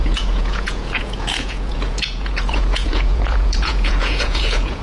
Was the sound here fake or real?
fake